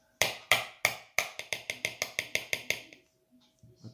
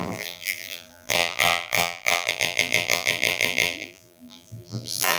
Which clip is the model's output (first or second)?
second